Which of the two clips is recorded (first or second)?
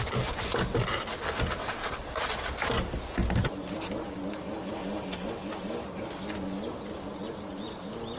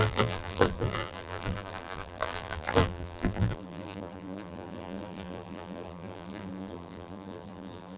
first